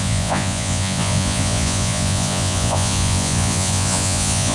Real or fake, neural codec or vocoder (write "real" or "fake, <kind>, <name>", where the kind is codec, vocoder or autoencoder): fake, vocoder, Vocos